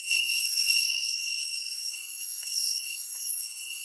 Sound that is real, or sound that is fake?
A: fake